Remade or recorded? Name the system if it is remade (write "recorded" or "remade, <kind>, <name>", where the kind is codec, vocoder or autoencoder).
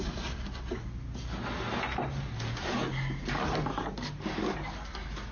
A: recorded